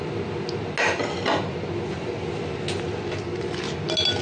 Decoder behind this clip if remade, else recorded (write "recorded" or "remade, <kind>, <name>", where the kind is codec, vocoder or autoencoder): recorded